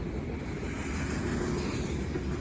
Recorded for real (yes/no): yes